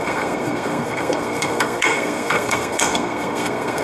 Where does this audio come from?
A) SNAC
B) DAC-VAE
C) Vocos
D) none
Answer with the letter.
A